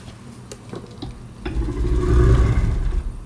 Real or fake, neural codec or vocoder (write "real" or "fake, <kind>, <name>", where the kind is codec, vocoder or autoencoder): real